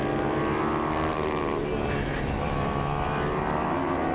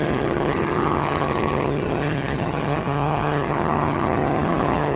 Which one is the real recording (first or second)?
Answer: first